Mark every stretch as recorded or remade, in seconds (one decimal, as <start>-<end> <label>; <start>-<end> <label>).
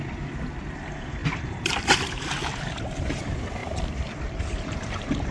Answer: 0.0-1.2 recorded; 1.2-2.2 remade; 2.2-3.6 recorded; 3.6-5.3 remade